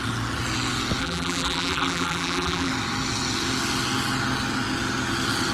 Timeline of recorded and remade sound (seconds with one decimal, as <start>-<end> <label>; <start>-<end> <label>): 0.0-1.0 recorded; 1.0-2.7 remade; 2.7-5.5 recorded